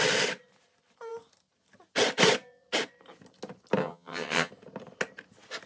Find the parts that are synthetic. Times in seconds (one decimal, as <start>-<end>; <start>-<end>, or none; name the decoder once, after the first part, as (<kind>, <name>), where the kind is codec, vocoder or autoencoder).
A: 3.8-4.5 (vocoder, HiFi-GAN)